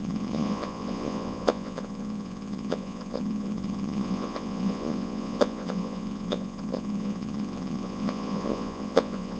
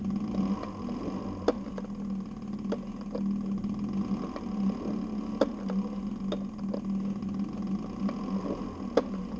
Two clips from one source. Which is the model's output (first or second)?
first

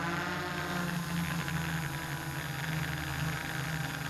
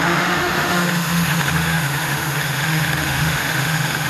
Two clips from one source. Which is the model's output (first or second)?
second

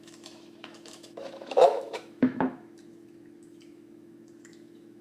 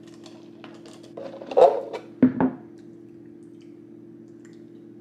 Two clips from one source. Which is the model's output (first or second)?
first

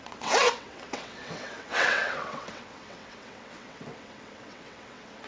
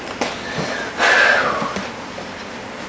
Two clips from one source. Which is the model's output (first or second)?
first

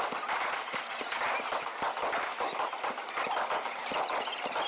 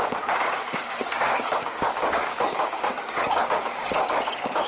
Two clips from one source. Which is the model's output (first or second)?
second